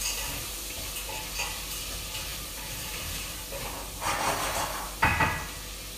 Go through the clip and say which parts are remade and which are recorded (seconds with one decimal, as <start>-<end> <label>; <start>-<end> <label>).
0.0-2.3 recorded; 2.3-3.4 remade; 3.4-6.0 recorded